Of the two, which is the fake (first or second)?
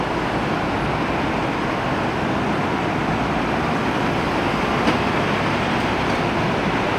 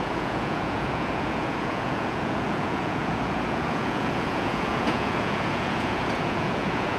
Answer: second